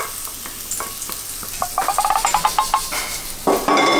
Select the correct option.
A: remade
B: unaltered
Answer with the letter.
B